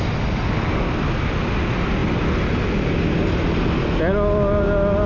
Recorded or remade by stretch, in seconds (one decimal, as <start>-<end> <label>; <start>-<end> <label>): 0.0-5.1 recorded